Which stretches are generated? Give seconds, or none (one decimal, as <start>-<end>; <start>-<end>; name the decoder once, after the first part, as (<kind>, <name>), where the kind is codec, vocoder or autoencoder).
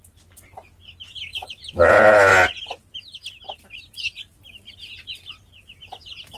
1.3-1.9 (vocoder, BigVGAN v2)